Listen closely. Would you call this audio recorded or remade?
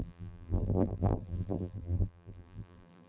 remade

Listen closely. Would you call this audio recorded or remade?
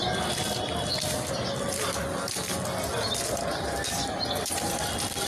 remade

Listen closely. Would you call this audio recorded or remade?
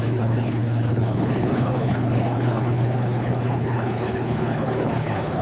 remade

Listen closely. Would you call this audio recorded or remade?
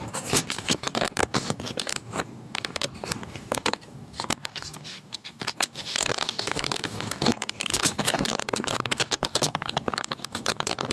remade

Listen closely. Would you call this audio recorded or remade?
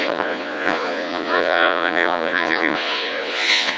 remade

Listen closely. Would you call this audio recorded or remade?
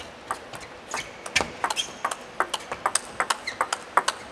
recorded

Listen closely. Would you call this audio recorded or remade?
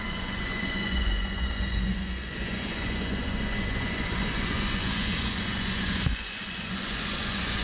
remade